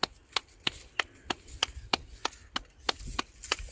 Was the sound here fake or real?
real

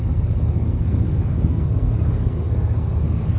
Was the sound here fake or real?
fake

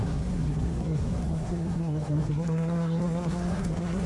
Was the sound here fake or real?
fake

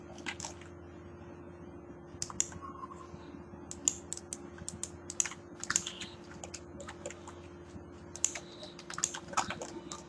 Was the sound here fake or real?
real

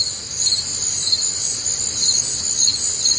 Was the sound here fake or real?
real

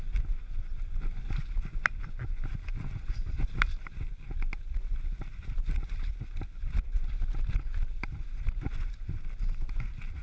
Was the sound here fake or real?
real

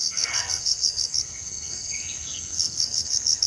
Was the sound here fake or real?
fake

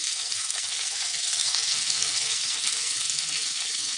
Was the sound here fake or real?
fake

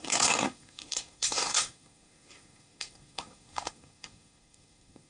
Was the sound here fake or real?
fake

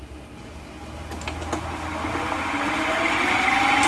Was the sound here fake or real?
real